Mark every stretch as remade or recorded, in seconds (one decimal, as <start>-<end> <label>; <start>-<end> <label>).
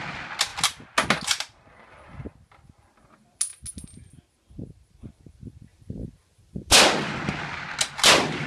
0.0-5.7 recorded; 5.7-7.2 remade; 7.2-8.5 recorded